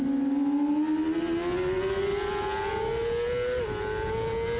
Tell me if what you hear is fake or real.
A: real